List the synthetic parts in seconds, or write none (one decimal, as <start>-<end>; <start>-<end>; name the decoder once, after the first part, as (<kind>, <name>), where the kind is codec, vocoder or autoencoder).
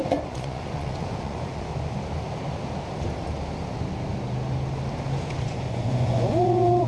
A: 0.0-1.7 (vocoder, Vocos); 5.3-6.9